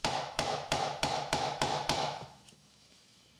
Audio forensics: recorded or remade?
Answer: remade